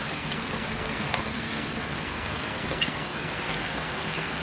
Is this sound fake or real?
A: fake